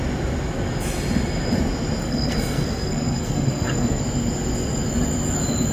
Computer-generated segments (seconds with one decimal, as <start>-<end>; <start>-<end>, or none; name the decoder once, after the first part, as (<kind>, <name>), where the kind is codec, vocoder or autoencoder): 2.0-4.0 (codec, SNAC)